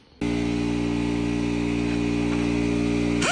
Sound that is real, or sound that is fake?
real